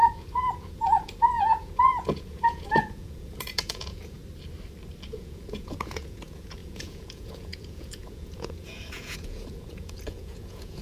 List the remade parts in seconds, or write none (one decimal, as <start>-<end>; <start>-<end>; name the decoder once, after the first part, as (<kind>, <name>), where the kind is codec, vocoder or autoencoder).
0.0-4.2 (vocoder, Vocos); 5.1-10.8